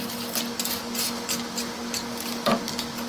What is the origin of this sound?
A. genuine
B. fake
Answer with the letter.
A